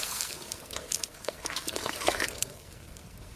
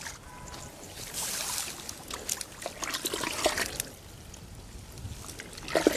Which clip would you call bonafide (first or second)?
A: second